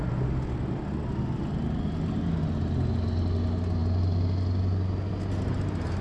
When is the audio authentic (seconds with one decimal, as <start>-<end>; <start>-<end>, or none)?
0.0-6.0